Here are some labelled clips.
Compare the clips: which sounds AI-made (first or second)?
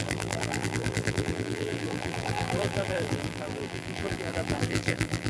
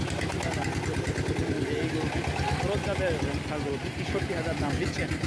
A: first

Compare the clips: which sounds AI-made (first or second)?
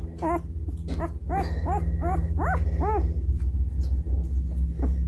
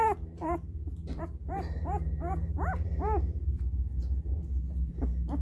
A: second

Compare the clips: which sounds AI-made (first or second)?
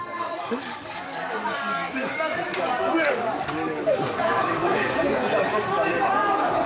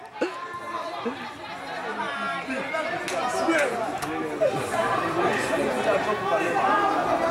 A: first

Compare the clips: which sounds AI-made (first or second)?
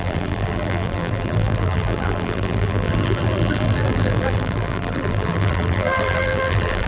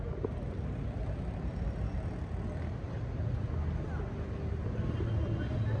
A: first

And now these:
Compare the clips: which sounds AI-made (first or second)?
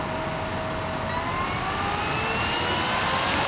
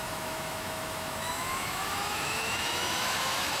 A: second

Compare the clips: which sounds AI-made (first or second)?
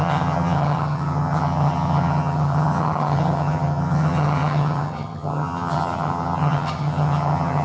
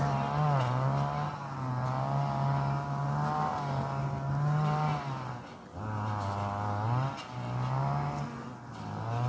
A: first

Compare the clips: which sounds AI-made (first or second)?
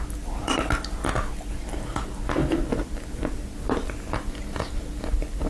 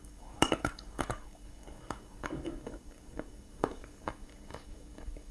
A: second